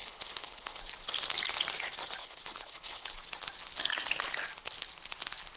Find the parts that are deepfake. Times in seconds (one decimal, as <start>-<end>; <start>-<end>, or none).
0.0-0.8; 2.2-3.1